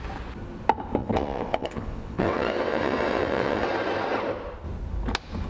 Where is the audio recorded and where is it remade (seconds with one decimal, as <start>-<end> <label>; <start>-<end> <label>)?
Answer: 0.0-1.0 recorded; 1.0-3.7 remade; 3.7-5.5 recorded